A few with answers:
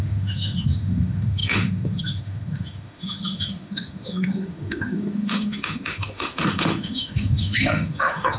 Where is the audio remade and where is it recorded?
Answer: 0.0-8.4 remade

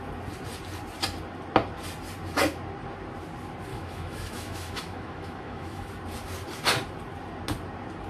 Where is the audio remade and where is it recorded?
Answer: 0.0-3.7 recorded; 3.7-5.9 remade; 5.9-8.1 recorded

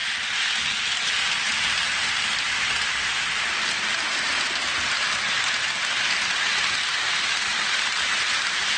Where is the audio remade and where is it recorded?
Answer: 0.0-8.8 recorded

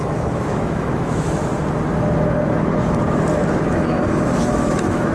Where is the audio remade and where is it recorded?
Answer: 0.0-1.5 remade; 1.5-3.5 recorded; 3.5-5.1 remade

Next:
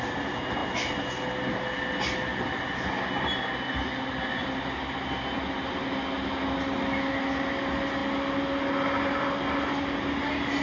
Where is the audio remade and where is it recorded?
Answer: 0.0-10.6 recorded

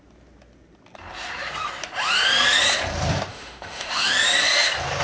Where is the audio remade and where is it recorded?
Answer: 0.0-3.3 recorded; 3.3-4.1 remade; 4.1-5.0 recorded

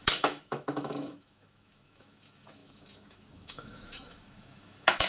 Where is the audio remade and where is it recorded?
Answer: 0.0-5.1 remade

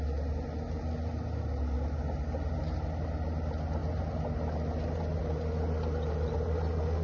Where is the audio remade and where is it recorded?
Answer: 0.0-7.0 recorded